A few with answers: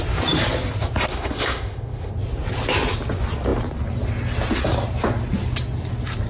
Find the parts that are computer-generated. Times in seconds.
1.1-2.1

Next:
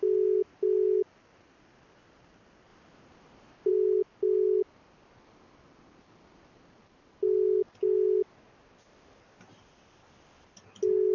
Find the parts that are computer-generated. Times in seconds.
none

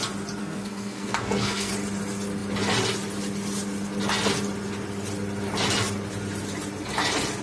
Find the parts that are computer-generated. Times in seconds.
0.4-1.7

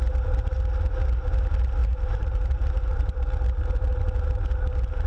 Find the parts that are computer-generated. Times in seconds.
1.8-3.2

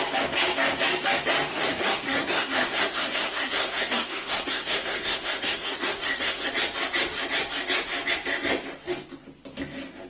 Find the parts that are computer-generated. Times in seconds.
1.5-6.5

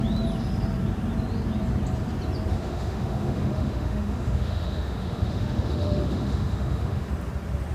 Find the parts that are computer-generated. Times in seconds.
2.5-7.1

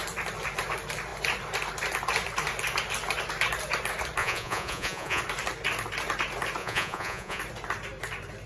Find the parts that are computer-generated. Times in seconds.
4.2-5.2; 6.6-7.4

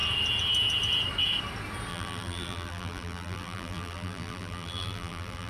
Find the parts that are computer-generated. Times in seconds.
1.9-5.5